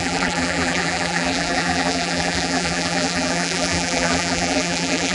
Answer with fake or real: fake